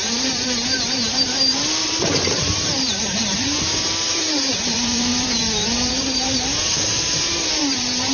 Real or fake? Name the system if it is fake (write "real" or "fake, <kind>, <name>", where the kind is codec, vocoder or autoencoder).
fake, vocoder, BigVGAN v2